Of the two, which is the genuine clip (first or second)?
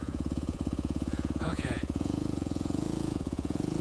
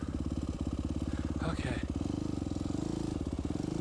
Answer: second